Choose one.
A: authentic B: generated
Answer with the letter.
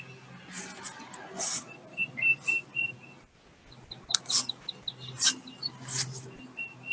A